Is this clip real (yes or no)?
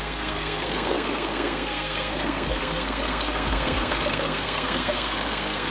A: no